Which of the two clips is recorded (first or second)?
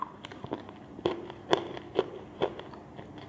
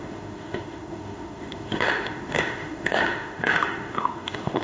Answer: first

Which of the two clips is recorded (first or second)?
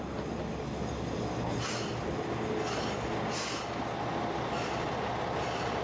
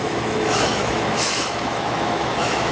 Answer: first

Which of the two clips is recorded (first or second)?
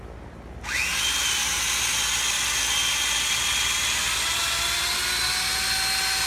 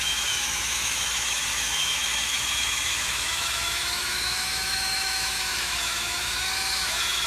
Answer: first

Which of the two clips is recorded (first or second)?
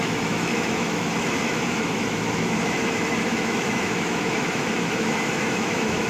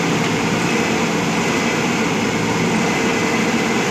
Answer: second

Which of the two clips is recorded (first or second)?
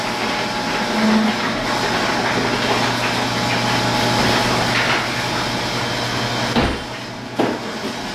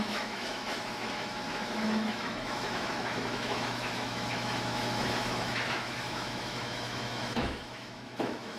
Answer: first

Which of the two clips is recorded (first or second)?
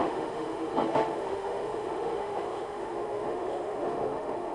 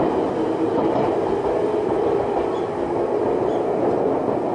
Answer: second